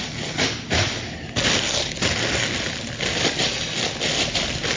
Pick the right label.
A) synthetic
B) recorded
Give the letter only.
B